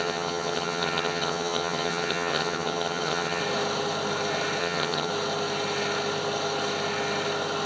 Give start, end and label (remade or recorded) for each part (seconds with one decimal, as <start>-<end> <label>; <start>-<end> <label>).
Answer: 0.0-3.4 remade; 3.4-4.6 recorded; 4.6-5.1 remade; 5.1-7.7 recorded